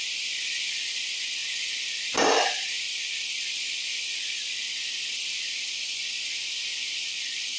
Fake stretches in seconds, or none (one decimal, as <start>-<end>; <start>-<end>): 0.0-4.6; 5.1-6.4; 7.1-7.6